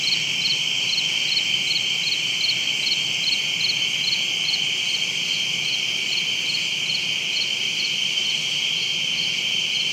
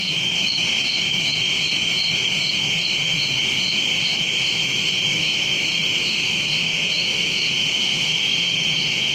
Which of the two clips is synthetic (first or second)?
second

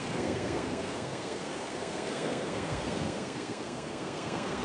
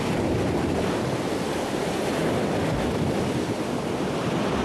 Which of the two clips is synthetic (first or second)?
first